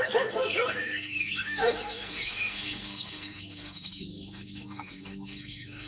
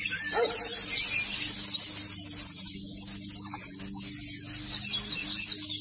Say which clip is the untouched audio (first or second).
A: second